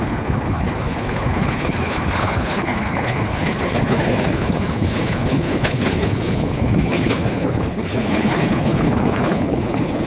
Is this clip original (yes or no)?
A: no